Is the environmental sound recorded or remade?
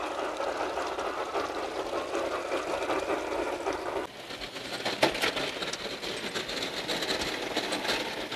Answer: recorded